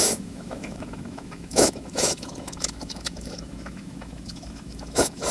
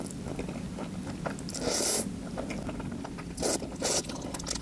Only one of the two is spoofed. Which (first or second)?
first